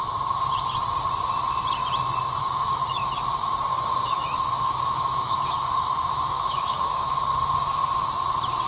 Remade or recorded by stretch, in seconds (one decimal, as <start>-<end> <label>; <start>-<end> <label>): 0.0-2.4 recorded; 2.4-3.2 remade; 3.2-3.7 recorded; 3.7-7.2 remade; 7.2-8.7 recorded